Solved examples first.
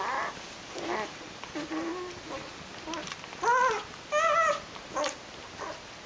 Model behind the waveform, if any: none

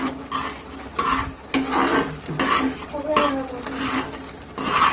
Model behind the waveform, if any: none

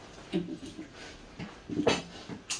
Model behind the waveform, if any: none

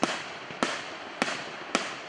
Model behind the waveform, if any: none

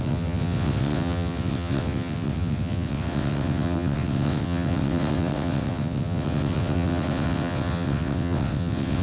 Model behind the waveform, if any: vocoder, WaveNeXt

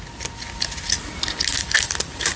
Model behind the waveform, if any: none